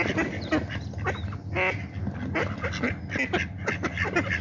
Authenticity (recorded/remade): recorded